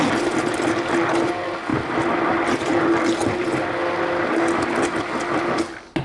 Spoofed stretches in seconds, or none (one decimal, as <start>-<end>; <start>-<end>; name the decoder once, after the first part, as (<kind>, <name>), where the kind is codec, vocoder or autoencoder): none